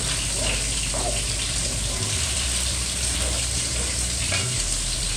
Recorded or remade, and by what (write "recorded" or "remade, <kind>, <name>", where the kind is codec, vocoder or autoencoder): remade, vocoder, BigVGAN v2